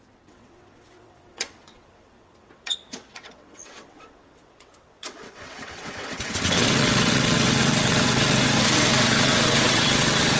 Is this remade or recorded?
remade